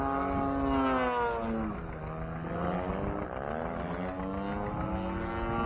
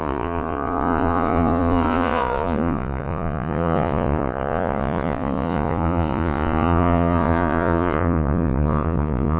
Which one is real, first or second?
first